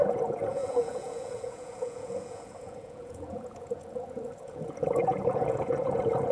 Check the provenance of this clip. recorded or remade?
remade